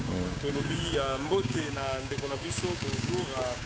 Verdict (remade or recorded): remade